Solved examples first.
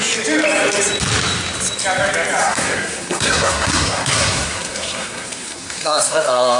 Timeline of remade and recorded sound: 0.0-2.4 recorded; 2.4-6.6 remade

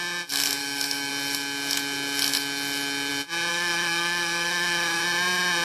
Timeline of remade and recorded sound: 0.0-0.6 recorded; 0.6-1.1 remade; 1.1-3.5 recorded; 3.5-5.0 remade; 5.0-5.6 recorded

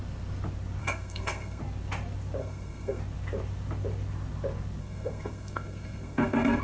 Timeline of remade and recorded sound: 0.0-0.8 recorded; 0.8-1.6 remade; 1.6-2.4 recorded; 2.4-3.0 remade; 3.0-4.8 recorded; 4.8-6.6 remade

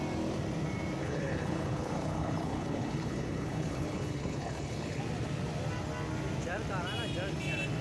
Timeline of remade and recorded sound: 0.0-1.0 recorded; 1.0-5.0 remade; 5.0-7.8 recorded

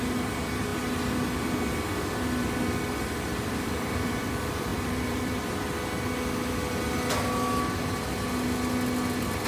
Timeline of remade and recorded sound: 0.0-3.3 recorded; 3.3-4.3 remade; 4.3-4.7 recorded; 4.7-5.5 remade; 5.5-9.5 recorded